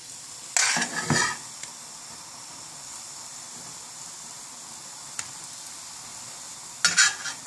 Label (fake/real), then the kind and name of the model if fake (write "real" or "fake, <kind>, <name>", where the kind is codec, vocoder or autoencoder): real